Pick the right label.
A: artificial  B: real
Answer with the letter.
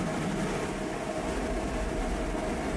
B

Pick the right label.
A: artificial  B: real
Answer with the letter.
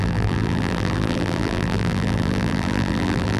A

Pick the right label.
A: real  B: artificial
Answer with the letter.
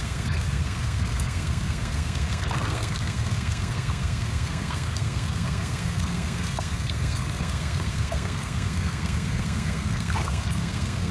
B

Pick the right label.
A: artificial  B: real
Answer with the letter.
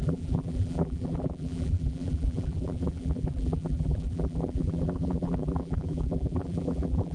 A